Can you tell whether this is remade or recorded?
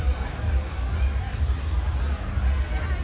recorded